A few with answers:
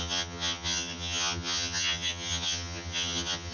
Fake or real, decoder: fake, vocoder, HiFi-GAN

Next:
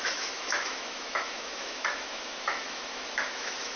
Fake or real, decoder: fake, autoencoder, DAC-VAE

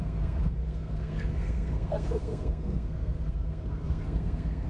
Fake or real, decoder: fake, codec, SNAC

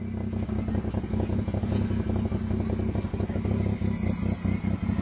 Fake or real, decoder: real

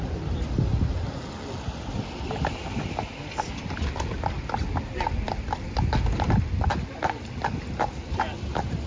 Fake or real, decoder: real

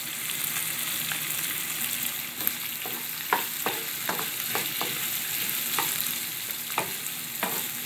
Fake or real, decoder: real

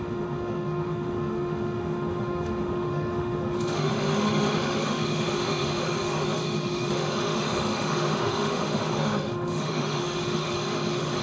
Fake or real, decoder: fake, autoencoder, DAC-VAE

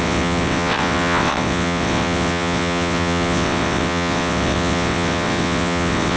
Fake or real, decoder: fake, vocoder, WaveNeXt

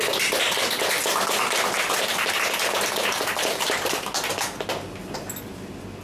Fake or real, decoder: real